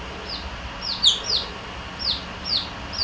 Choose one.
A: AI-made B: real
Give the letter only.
B